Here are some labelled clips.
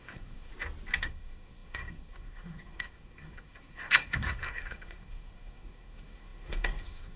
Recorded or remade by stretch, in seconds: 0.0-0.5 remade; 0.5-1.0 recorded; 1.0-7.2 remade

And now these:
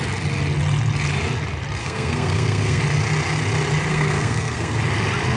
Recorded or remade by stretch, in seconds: 0.0-1.8 recorded; 1.8-2.8 remade; 2.8-3.9 recorded; 3.9-4.8 remade; 4.8-5.4 recorded

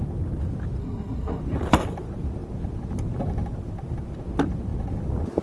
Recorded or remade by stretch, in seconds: 0.0-0.8 recorded; 0.8-1.4 remade; 1.4-5.4 recorded

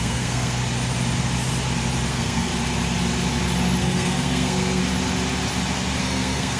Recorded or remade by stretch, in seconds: 0.0-0.6 remade; 0.6-2.1 recorded; 2.1-2.5 remade; 2.5-3.8 recorded; 3.8-4.8 remade; 4.8-6.0 recorded; 6.0-6.6 remade

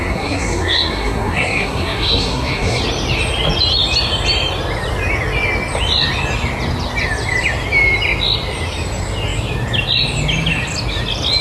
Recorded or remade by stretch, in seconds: 0.0-2.8 remade; 2.8-11.4 recorded